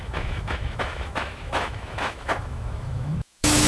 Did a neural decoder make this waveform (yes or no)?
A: yes